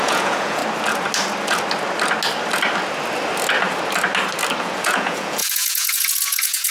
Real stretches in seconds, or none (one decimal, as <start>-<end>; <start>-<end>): 0.6-4.6